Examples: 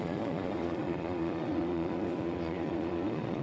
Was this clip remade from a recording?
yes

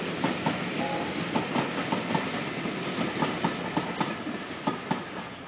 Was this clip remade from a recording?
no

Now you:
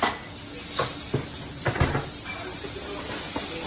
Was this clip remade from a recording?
no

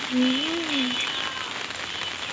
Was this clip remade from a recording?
no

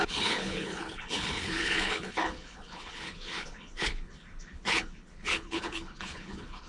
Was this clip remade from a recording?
yes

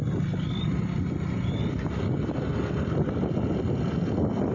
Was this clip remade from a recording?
no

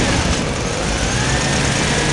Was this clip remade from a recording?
no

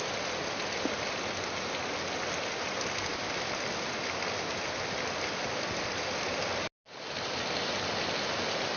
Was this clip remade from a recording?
no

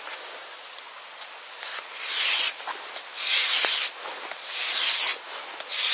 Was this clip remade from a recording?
no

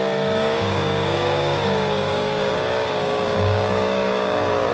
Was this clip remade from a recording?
yes